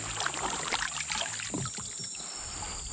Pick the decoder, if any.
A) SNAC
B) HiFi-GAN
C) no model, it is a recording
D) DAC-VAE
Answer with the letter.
C